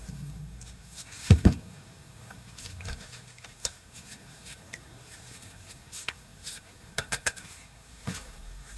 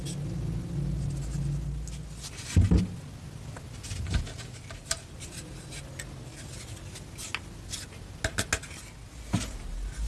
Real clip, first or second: second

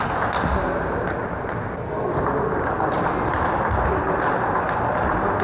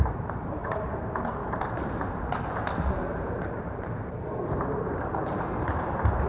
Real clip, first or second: first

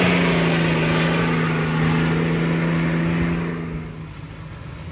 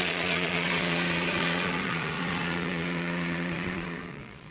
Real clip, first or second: first